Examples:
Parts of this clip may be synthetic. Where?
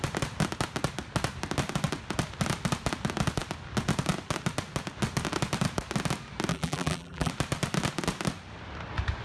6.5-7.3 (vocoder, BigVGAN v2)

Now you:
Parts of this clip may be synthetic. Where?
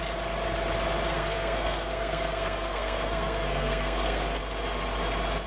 1.1-4.4 (codec, SNAC)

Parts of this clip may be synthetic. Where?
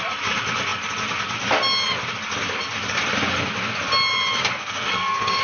4.5-5.4 (codec, SNAC)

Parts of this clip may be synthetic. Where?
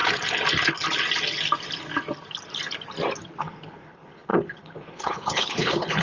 3.4-6.0 (codec, HILCodec)